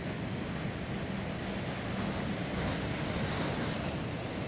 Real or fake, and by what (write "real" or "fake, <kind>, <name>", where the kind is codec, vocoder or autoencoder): real